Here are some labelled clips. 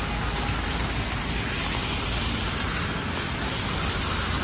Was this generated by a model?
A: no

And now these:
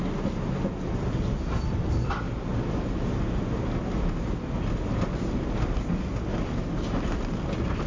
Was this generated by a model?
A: no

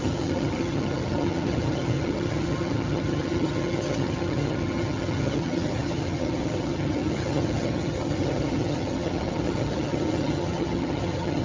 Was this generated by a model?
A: yes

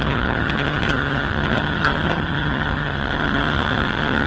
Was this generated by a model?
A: yes